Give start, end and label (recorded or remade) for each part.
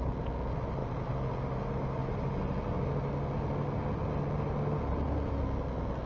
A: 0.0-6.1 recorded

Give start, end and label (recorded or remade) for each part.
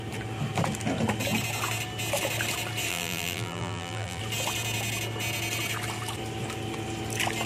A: 0.0-2.9 recorded; 2.9-4.2 remade; 4.2-7.5 recorded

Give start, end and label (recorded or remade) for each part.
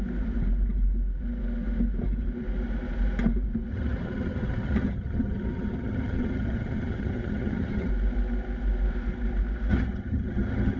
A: 0.0-3.7 recorded; 3.7-7.9 remade; 7.9-9.7 recorded; 9.7-10.8 remade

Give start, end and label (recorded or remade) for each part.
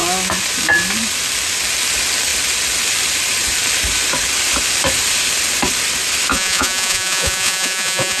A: 0.0-6.3 recorded; 6.3-8.2 remade